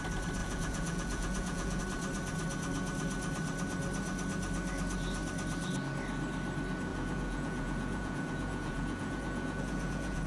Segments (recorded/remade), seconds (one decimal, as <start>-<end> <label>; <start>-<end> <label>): 0.0-0.4 recorded; 0.4-1.8 remade; 1.8-6.9 recorded; 6.9-10.3 remade